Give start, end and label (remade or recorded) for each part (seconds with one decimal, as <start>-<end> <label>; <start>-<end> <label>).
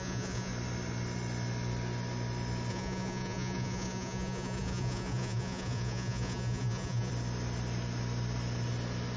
0.0-0.5 remade; 0.5-2.7 recorded; 2.7-7.1 remade; 7.1-9.2 recorded